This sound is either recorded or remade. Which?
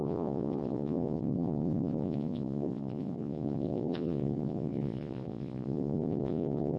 remade